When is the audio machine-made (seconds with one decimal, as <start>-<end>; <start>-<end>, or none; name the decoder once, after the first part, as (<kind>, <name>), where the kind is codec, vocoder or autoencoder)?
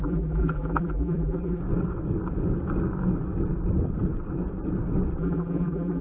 0.0-1.6 (vocoder, BigVGAN v2); 5.2-6.0